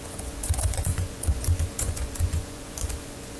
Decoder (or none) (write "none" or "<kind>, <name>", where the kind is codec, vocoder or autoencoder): vocoder, Vocos